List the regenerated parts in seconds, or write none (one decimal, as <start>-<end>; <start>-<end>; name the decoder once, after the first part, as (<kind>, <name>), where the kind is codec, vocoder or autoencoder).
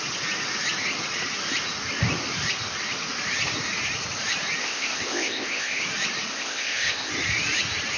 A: 4.6-5.8 (codec, ZipCodec); 6.3-7.1